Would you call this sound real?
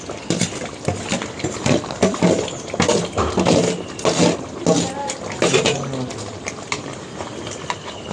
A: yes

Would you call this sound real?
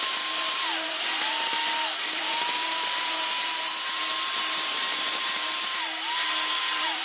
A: no